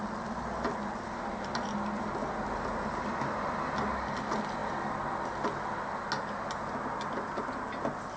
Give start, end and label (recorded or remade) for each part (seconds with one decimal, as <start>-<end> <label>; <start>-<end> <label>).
0.0-8.2 recorded